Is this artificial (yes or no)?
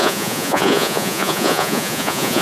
yes